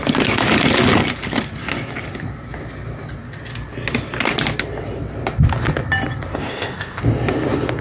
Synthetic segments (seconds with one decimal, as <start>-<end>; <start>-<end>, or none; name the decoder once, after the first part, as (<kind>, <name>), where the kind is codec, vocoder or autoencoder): 6.4-7.0 (codec, ZipCodec)